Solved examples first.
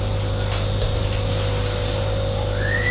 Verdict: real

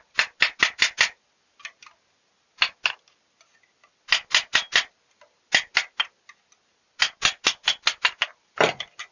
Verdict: real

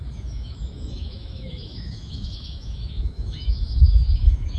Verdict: fake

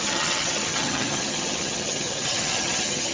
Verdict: fake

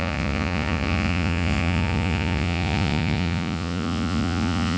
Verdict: fake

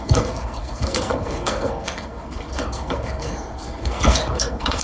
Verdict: fake